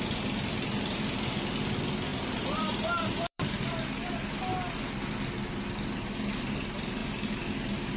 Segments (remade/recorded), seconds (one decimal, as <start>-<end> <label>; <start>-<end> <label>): 0.0-2.1 recorded; 2.1-3.7 remade; 3.7-7.0 recorded; 7.0-8.0 remade